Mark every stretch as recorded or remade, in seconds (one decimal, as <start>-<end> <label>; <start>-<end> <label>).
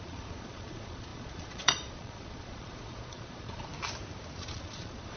0.0-3.7 remade; 3.7-4.4 recorded; 4.4-5.2 remade